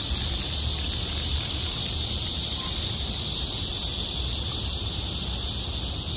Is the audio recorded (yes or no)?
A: yes